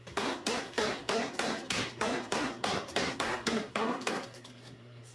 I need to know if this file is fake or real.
fake